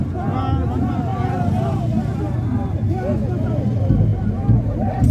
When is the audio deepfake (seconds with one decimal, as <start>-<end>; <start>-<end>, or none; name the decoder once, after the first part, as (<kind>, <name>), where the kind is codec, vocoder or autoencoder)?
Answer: 1.1-1.8 (vocoder, BigVGAN v2); 4.1-5.1